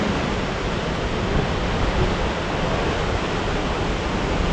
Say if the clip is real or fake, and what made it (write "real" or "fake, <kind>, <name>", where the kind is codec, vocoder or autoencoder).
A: real